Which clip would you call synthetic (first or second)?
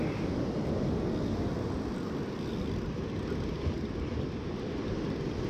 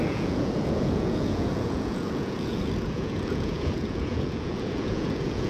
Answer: second